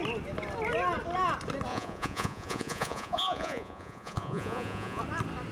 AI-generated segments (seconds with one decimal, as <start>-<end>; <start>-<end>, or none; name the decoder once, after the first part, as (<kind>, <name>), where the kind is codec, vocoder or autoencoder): 1.7-5.0 (vocoder, Vocos)

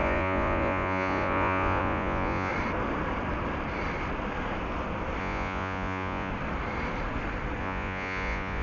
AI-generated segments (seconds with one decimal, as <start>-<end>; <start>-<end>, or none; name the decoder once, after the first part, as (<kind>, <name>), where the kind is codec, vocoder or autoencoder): 0.0-2.5 (vocoder, Vocos); 5.2-6.3; 7.6-8.6

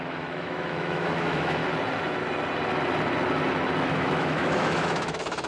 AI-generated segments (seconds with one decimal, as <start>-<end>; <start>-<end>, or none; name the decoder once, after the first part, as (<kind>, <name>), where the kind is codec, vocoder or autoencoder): 0.0-1.6 (autoencoder, DAC-VAE); 3.9-5.5

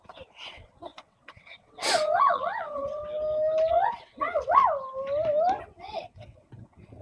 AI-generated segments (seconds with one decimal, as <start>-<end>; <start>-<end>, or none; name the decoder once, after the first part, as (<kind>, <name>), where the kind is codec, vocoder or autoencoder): 0.0-3.0 (vocoder, WaveNeXt); 3.7-4.6; 5.6-7.0

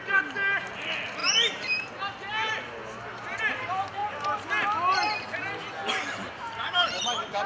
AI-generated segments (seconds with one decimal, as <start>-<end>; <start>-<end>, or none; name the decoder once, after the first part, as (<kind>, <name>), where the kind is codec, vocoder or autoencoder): 1.2-1.9 (vocoder, BigVGAN v2); 4.0-4.5; 5.9-7.5

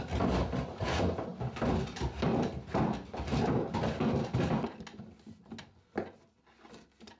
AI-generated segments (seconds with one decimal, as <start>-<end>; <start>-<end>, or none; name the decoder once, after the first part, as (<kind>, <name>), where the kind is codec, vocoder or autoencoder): none

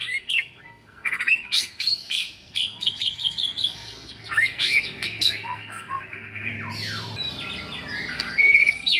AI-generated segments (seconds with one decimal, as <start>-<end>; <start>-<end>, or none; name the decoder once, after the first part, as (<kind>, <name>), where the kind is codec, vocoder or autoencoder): 0.0-6.5 (codec, SNAC); 8.1-9.0